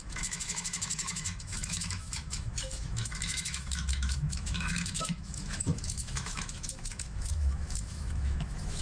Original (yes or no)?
no